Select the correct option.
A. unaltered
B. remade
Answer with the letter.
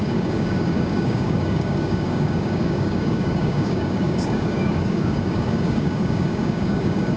B